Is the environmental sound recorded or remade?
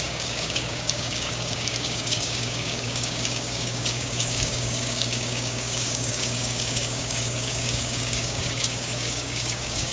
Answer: remade